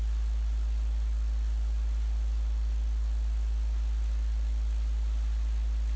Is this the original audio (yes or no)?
yes